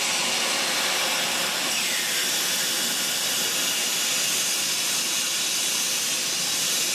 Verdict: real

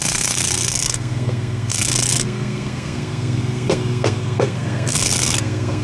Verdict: fake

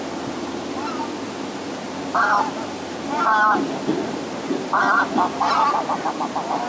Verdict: real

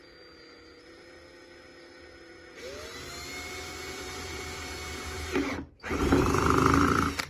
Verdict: real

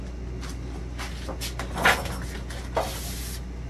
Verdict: real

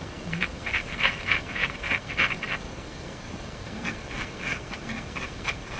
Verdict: fake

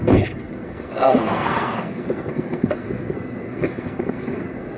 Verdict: fake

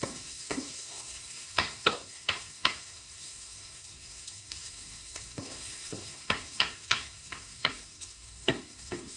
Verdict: fake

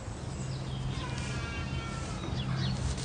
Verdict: real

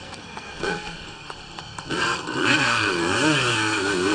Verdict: fake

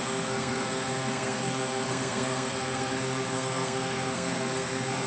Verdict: fake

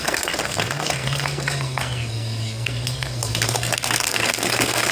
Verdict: fake